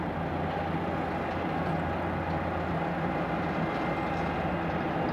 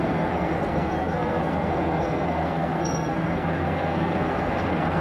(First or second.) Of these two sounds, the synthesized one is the second